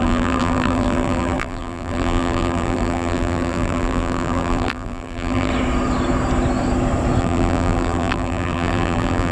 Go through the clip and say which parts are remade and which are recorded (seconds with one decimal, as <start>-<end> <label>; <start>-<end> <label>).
0.0-5.5 remade; 5.5-7.2 recorded; 7.2-9.3 remade